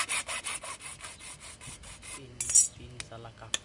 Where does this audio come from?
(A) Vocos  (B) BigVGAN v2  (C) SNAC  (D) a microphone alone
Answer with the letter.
D